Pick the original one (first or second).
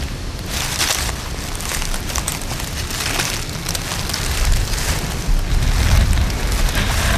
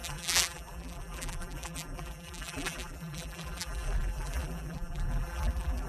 first